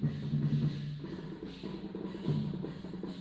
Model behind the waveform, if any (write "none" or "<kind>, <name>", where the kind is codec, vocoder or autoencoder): none